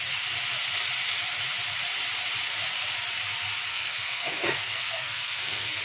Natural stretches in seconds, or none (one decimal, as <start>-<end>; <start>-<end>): 0.0-3.7